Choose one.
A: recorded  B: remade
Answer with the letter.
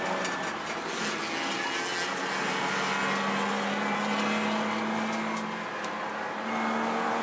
A